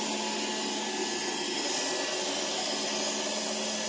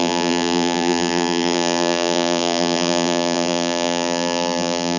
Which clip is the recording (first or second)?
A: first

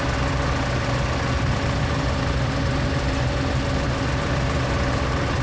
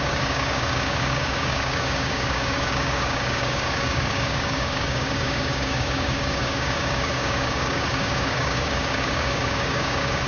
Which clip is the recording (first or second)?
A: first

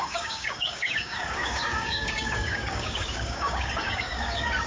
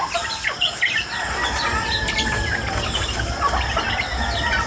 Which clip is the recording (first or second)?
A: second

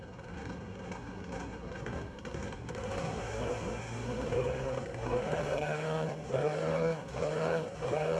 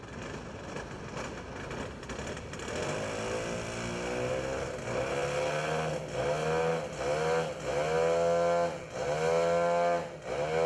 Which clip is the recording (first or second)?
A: second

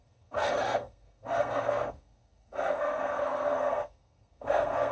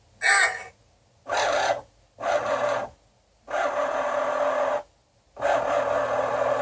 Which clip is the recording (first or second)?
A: second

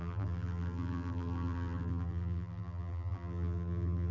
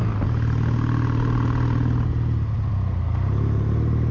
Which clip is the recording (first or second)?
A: second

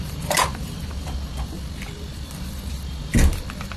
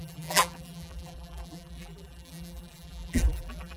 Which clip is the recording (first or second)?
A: first